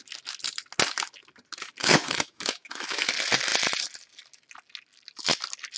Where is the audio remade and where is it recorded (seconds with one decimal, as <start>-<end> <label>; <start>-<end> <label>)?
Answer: 0.0-1.8 recorded; 1.8-3.1 remade; 3.1-5.8 recorded